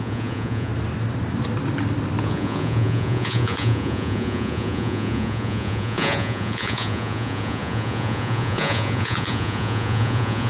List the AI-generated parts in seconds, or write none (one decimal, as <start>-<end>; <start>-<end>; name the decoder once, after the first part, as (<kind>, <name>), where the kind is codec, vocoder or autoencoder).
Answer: 0.0-0.7 (vocoder, Vocos); 2.2-10.5